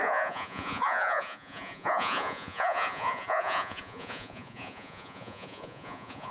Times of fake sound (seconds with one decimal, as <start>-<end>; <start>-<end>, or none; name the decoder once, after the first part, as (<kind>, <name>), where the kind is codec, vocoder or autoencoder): 0.0-6.3 (vocoder, Vocos)

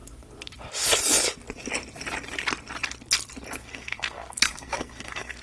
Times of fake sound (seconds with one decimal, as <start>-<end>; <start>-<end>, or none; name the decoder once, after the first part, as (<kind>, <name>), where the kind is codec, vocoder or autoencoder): 3.6-5.4 (codec, SNAC)

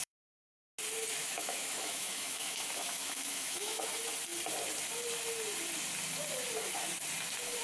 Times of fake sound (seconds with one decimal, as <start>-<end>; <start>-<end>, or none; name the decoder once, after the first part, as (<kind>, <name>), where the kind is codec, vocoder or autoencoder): 0.0-0.6 (autoencoder, DAC-VAE); 1.2-3.8

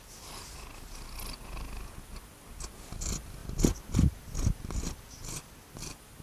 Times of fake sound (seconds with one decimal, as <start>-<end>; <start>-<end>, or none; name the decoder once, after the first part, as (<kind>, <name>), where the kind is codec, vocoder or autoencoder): none

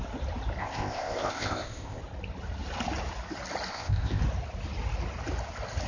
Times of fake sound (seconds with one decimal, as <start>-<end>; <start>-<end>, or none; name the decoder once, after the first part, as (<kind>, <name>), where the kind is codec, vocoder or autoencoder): 0.6-2.0 (codec, ZipCodec); 3.7-4.2

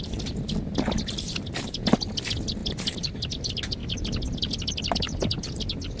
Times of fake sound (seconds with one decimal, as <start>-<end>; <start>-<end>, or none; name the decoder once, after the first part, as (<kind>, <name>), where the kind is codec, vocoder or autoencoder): none

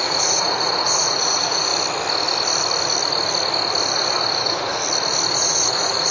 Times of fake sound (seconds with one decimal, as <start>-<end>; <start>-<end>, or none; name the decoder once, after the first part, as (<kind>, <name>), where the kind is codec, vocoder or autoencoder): 0.0-1.7 (vocoder, Vocos); 4.3-4.7; 5.3-6.1

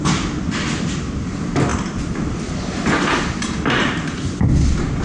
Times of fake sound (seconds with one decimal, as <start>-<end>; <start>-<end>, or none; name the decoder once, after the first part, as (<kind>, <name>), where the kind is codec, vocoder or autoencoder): none